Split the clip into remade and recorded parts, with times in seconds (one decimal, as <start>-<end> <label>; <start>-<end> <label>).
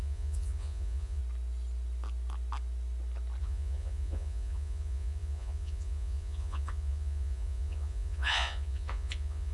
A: 0.0-1.2 remade; 1.2-3.4 recorded; 3.4-9.5 remade